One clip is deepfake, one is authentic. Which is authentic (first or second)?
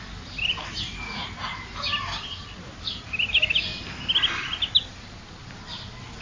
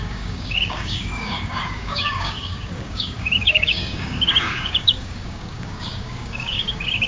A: first